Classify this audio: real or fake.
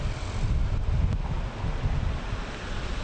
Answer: real